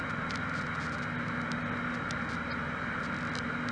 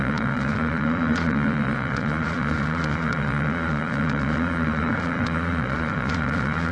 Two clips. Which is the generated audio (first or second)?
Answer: second